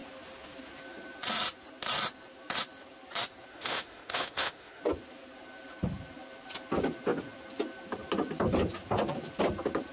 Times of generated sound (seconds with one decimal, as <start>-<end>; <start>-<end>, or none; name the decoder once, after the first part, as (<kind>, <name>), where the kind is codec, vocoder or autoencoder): 3.5-4.8 (autoencoder, DAC-VAE)